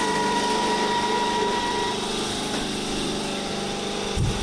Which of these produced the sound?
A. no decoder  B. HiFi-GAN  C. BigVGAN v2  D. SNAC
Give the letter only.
C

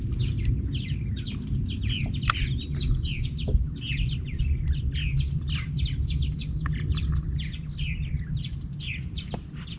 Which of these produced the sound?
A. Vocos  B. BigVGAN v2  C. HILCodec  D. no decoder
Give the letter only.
D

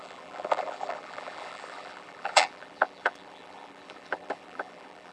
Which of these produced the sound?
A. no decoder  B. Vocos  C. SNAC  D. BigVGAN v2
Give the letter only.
D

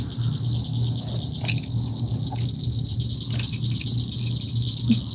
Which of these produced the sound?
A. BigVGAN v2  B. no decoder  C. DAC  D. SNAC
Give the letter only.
B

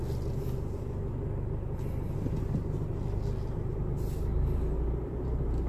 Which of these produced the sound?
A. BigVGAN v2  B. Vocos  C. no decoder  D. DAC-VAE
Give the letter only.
C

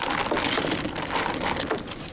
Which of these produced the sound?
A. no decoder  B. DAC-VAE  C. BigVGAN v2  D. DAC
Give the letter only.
A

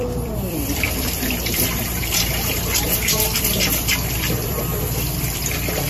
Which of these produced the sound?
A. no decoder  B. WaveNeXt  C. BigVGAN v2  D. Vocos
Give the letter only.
C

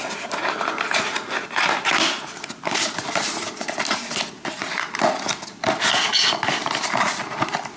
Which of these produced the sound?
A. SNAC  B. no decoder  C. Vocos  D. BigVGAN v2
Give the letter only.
B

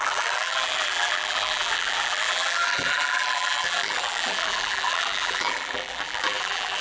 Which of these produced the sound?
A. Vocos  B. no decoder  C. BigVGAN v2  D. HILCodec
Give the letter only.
C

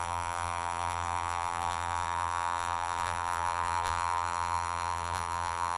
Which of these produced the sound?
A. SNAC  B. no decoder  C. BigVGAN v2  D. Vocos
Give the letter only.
C